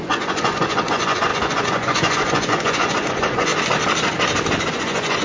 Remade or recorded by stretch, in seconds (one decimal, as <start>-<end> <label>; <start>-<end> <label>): 0.0-3.5 remade; 3.5-4.7 recorded; 4.7-5.2 remade